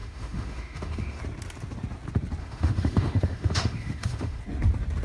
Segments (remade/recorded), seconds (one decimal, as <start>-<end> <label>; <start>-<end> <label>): 0.0-1.2 remade; 1.2-2.4 recorded; 2.4-4.4 remade; 4.4-5.0 recorded